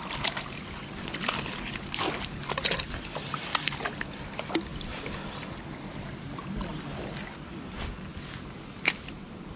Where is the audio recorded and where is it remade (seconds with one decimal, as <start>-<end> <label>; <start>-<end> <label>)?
0.0-9.6 recorded